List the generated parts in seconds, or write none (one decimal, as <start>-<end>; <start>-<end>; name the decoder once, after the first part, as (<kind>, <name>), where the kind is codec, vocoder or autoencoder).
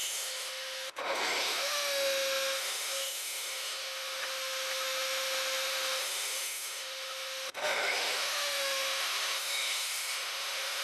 0.0-10.8 (autoencoder, DAC-VAE)